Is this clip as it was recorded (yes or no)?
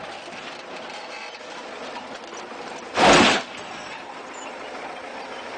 yes